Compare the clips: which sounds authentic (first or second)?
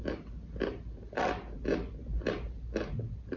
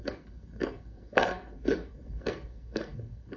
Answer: first